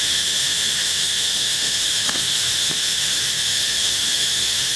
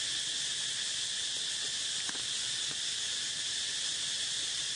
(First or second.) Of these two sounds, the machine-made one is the first